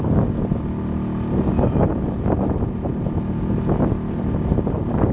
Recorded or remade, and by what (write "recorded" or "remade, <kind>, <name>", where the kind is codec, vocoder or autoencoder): recorded